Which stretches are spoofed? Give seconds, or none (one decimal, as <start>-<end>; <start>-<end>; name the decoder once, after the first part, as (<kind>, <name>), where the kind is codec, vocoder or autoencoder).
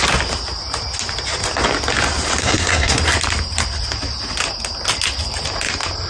2.4-3.0 (codec, SNAC)